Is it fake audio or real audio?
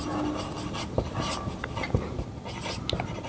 real